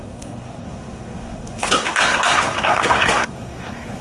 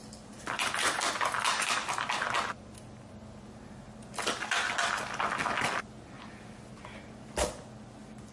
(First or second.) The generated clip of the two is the first